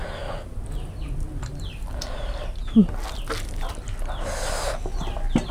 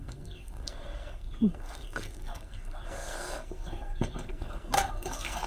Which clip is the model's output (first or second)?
second